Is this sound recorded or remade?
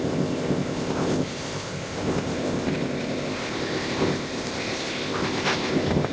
remade